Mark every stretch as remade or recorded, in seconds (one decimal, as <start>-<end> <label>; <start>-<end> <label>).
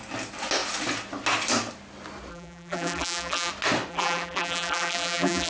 0.0-2.3 recorded; 2.3-3.5 remade; 3.5-3.9 recorded; 3.9-5.5 remade